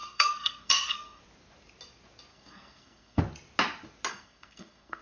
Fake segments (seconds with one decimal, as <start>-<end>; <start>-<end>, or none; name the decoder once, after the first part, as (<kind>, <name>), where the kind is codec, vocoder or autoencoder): 0.0-1.2 (codec, SNAC); 2.3-3.2; 4.1-5.0